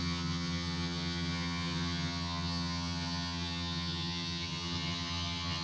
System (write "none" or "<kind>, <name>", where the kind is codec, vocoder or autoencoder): vocoder, HiFi-GAN